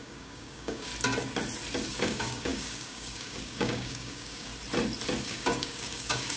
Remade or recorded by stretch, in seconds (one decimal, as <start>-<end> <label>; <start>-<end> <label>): 0.0-0.9 remade; 0.9-1.9 recorded; 1.9-4.5 remade; 4.5-5.2 recorded; 5.2-6.4 remade